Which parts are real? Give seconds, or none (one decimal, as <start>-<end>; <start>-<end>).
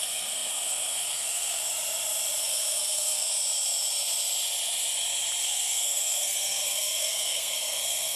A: 1.7-2.4; 3.3-5.4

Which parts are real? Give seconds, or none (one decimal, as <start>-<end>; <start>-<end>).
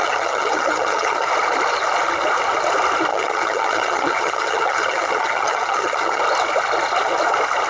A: 1.3-3.1; 6.2-7.7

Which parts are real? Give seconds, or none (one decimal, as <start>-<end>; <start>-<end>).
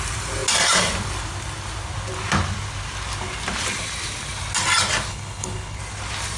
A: 0.0-5.1; 5.8-6.4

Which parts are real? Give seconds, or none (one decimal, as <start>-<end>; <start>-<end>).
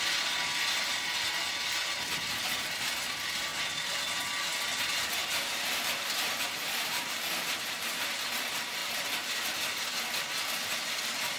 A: 0.0-5.2; 7.9-8.8; 9.3-11.4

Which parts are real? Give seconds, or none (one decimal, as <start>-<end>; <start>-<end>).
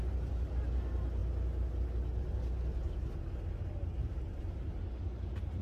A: 0.0-4.0; 4.7-5.6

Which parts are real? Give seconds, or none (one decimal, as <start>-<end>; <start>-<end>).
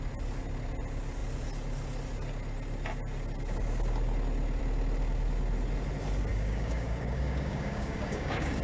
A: 0.0-6.3